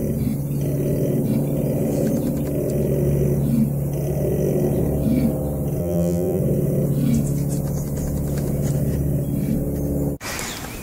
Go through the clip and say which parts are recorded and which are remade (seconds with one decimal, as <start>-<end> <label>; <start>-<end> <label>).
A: 0.0-5.8 recorded; 5.8-6.4 remade; 6.4-10.8 recorded